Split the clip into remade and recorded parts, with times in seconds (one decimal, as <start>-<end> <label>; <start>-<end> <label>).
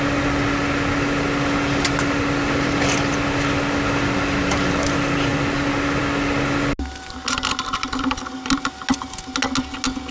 0.0-10.1 recorded